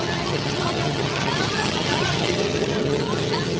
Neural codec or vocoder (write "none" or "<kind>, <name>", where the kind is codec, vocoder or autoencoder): vocoder, HiFi-GAN